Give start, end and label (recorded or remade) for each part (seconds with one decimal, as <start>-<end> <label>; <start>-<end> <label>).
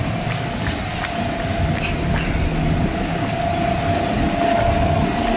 0.0-5.4 recorded